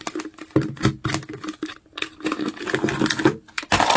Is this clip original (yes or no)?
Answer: yes